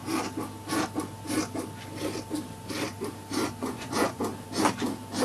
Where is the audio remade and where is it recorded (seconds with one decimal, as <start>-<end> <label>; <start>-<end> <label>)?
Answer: 0.0-3.6 recorded; 3.6-4.2 remade; 4.2-5.2 recorded